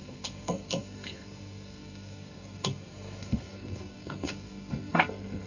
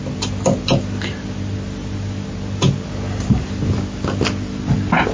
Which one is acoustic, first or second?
second